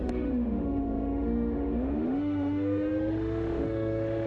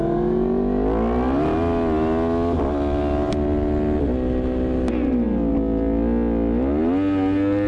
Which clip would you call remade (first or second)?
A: first